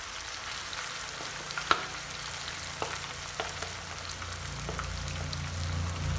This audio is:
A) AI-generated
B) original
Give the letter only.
B